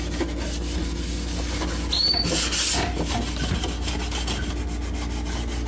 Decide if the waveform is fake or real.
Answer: real